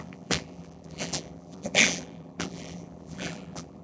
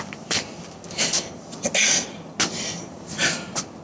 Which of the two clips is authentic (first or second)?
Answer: second